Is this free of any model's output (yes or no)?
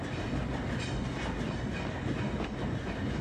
yes